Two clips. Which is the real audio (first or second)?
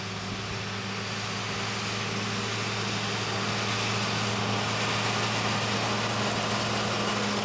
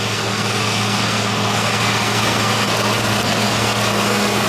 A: first